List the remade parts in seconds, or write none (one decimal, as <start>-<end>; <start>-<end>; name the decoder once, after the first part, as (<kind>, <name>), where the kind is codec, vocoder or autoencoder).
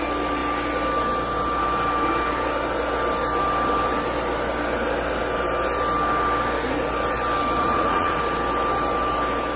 7.6-8.2 (vocoder, Vocos)